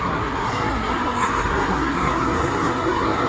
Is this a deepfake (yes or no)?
yes